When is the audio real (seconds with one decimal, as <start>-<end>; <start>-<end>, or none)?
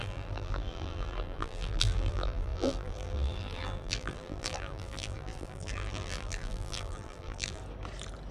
7.6-8.3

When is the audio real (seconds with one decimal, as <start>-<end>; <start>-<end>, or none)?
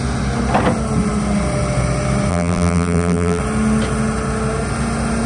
0.0-2.3; 3.4-5.3